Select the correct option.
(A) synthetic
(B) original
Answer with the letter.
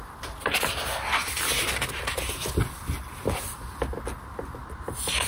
B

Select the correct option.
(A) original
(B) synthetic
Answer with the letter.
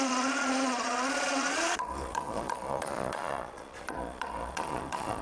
B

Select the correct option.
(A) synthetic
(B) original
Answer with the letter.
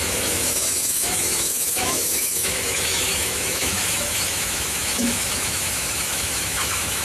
A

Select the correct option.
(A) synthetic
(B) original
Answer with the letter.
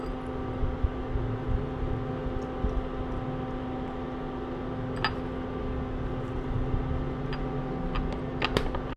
B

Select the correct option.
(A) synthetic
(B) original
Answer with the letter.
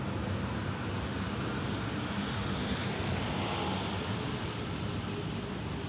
B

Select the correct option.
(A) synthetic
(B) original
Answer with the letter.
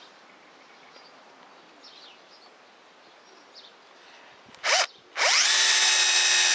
B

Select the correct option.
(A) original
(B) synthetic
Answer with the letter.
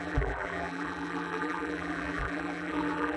B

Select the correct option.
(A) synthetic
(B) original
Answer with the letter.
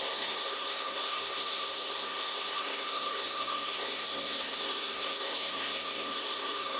A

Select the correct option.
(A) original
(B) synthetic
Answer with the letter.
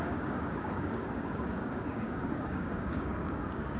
B